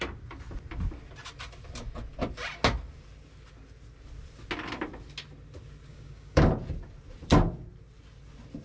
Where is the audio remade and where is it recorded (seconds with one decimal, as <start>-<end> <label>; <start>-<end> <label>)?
0.0-5.9 recorded; 5.9-6.4 remade; 6.4-8.6 recorded